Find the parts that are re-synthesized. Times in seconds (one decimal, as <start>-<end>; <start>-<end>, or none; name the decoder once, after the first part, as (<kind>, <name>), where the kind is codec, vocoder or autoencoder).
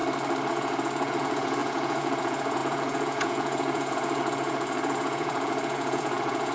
0.5-6.5 (vocoder, Vocos)